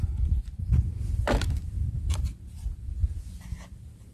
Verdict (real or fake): fake